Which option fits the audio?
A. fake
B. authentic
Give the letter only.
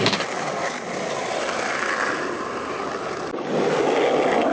B